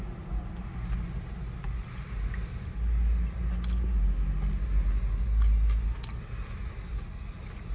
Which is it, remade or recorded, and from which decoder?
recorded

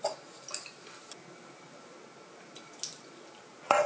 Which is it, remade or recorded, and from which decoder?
recorded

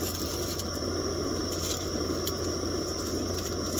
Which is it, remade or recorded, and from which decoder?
recorded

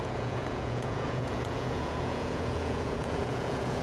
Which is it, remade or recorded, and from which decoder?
remade, vocoder, Vocos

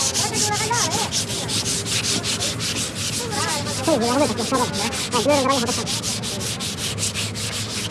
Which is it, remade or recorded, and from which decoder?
recorded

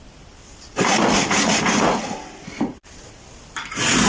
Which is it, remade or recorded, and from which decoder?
recorded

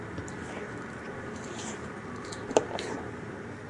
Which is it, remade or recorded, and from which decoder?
recorded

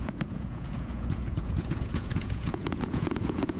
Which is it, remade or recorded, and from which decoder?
remade, vocoder, Vocos